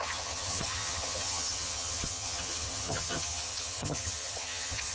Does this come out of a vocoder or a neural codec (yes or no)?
yes